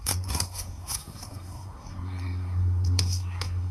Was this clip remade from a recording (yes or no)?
yes